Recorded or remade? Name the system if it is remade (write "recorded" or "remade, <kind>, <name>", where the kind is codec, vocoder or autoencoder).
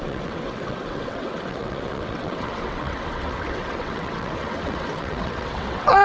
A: remade, vocoder, WaveNeXt